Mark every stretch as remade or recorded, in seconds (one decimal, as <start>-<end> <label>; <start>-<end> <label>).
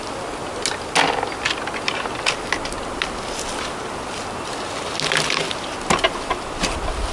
0.0-7.1 recorded